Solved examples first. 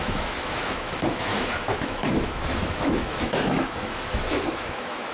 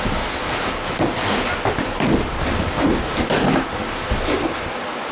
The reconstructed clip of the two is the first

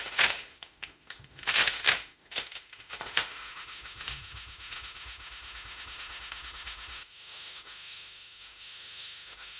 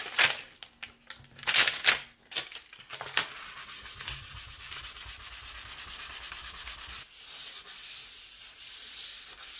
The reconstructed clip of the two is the first